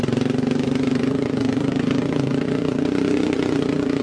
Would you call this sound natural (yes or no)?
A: no